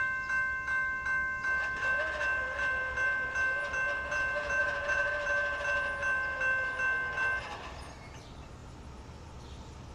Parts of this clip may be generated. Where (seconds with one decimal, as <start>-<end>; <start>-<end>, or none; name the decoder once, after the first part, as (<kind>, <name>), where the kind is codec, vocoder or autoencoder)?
4.6-5.1 (vocoder, Vocos)